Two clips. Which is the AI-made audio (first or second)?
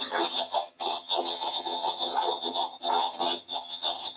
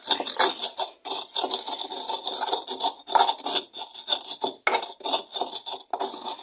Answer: first